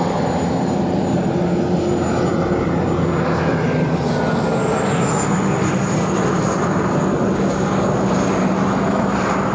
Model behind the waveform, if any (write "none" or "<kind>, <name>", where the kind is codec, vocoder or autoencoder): none